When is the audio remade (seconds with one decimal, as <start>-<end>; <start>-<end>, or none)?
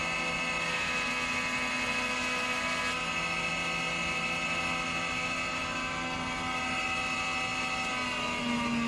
none